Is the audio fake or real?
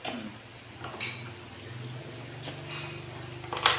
real